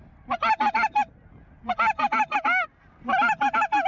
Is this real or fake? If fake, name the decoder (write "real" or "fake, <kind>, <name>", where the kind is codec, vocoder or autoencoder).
real